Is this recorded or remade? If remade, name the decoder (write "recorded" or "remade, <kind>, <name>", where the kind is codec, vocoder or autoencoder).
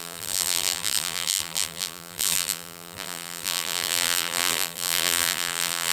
remade, vocoder, BigVGAN v2